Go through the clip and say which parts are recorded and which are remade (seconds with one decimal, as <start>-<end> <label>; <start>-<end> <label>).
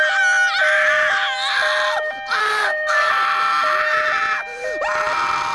0.0-2.4 recorded; 2.4-3.1 remade; 3.1-5.5 recorded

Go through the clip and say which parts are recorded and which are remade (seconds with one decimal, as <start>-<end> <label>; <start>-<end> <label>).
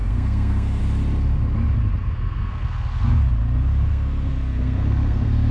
0.0-0.8 remade; 0.8-2.0 recorded; 2.0-3.1 remade; 3.1-3.9 recorded; 3.9-5.5 remade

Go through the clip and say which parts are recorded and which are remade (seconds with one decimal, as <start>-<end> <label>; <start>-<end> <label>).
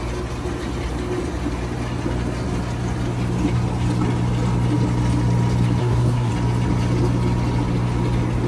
0.0-5.8 recorded; 5.8-6.3 remade; 6.3-8.5 recorded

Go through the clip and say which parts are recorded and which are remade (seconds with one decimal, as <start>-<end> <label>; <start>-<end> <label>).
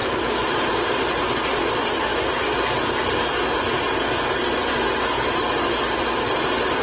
0.0-6.8 recorded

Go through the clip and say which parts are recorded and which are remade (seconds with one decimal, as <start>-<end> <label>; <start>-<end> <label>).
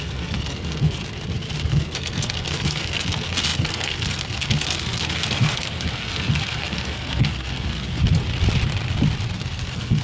0.0-1.0 remade; 1.0-1.7 recorded; 1.7-8.0 remade; 8.0-9.4 recorded; 9.4-10.0 remade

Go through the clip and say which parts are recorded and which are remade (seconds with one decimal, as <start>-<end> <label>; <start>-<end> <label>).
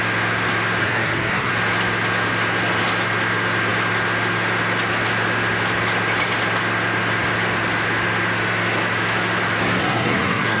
0.0-0.8 recorded; 0.8-1.5 remade; 1.5-9.8 recorded; 9.8-10.6 remade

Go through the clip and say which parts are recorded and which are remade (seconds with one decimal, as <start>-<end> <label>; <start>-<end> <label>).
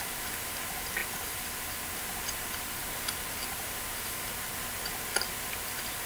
0.0-6.1 recorded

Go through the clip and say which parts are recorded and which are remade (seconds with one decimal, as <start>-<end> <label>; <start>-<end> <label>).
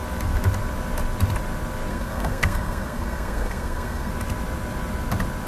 0.0-1.9 recorded; 1.9-4.1 remade; 4.1-5.5 recorded